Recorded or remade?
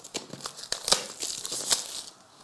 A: recorded